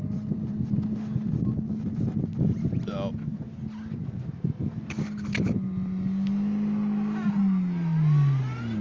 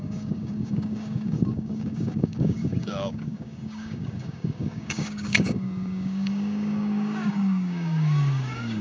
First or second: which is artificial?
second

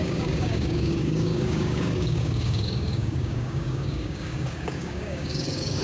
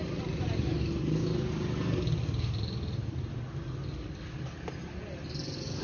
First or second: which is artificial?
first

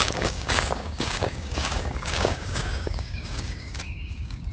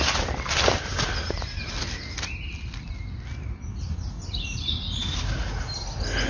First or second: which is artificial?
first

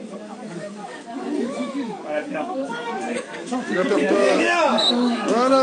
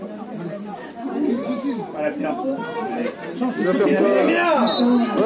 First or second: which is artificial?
first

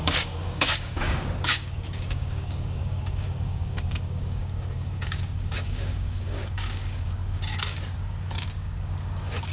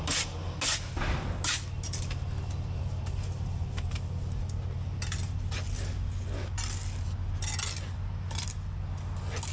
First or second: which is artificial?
first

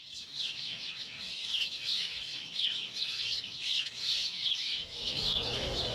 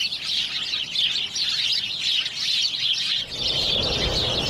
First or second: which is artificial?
first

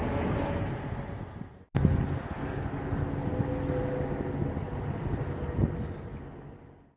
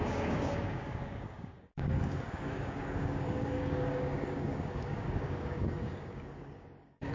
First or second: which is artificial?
second